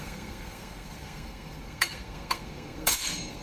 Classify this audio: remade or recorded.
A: remade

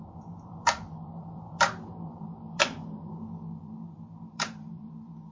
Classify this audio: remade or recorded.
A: remade